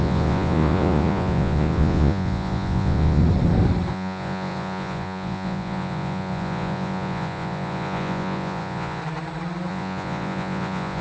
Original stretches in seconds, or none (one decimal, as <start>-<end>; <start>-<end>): 3.2-3.9; 9.0-9.7